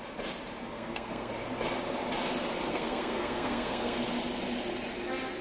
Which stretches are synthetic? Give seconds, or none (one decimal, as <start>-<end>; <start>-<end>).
0.6-1.3; 2.7-4.0